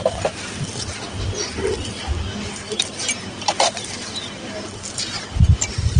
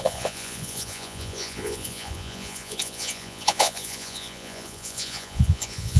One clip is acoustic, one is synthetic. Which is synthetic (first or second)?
second